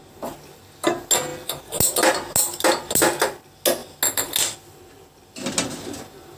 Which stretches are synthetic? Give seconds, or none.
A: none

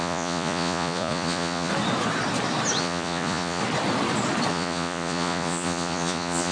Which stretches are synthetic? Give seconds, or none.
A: 0.0-1.7 (vocoder, Vocos); 2.8-3.6; 4.5-6.5

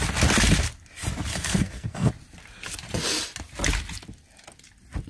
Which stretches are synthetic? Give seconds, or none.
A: 1.3-2.1 (codec, SNAC)

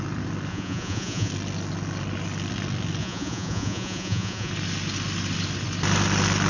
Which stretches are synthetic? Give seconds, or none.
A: 0.5-1.3 (vocoder, Vocos); 3.0-4.5

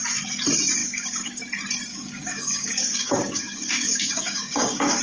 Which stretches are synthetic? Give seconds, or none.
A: 0.8-1.4 (codec, DAC); 1.9-5.0